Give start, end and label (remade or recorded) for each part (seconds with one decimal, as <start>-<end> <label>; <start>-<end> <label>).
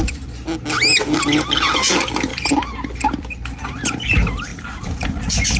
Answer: 0.0-2.3 recorded; 2.3-3.6 remade; 3.6-4.5 recorded; 4.5-5.0 remade; 5.0-5.6 recorded